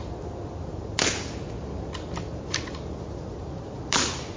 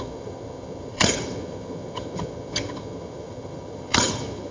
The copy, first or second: second